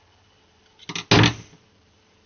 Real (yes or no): yes